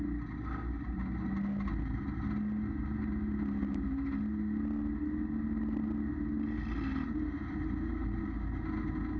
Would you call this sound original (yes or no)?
yes